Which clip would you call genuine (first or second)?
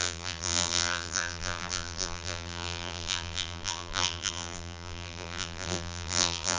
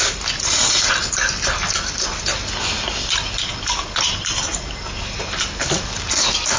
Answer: second